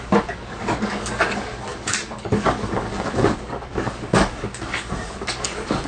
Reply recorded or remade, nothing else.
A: remade